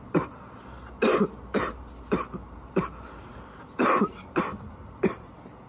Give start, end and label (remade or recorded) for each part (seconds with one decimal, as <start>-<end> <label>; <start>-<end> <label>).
0.0-2.4 recorded; 2.4-4.4 remade; 4.4-5.7 recorded